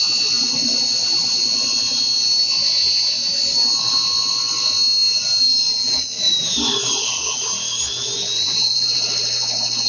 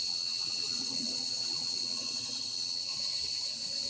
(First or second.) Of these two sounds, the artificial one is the second